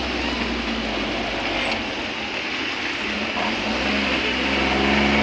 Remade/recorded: recorded